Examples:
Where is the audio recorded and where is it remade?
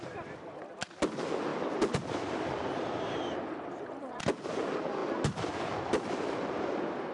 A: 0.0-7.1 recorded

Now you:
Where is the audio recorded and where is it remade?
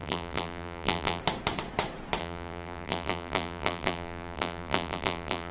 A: 0.0-1.2 remade; 1.2-2.2 recorded; 2.2-5.5 remade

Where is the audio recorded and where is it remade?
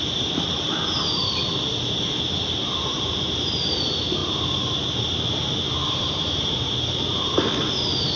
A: 0.0-1.4 remade; 1.4-2.5 recorded; 2.5-8.2 remade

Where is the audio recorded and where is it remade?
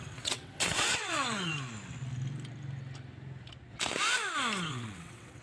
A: 0.0-1.5 remade; 1.5-4.7 recorded; 4.7-5.4 remade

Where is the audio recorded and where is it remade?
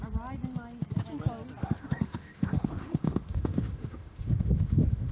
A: 0.0-1.6 recorded; 1.6-5.1 remade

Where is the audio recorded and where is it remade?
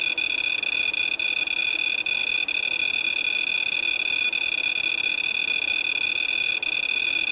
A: 0.0-7.3 recorded